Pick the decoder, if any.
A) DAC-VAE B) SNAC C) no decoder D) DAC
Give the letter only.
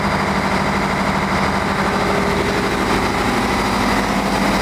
C